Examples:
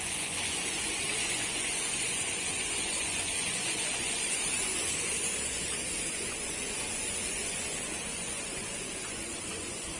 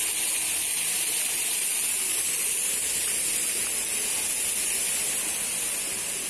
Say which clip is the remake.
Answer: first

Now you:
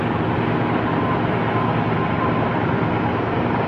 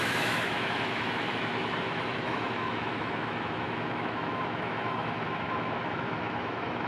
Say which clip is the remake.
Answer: second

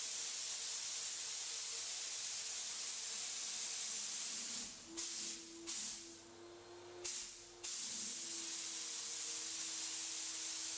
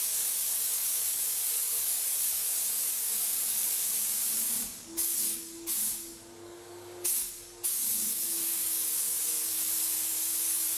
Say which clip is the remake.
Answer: second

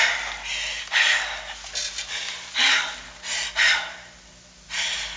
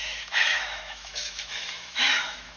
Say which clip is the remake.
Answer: second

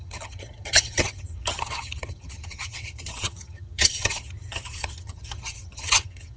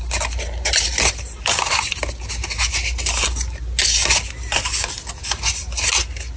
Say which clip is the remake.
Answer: first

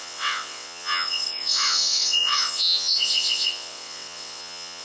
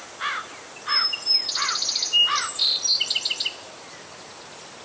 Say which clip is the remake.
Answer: first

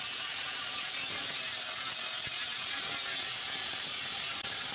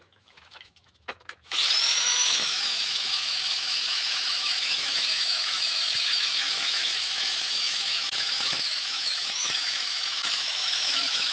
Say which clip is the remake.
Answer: second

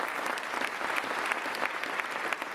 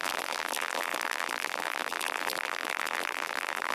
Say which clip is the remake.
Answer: second